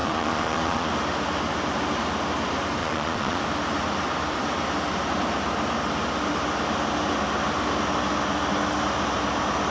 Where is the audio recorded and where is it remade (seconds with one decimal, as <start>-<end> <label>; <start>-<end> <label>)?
0.0-0.9 remade; 0.9-2.8 recorded; 2.8-3.4 remade; 3.4-9.7 recorded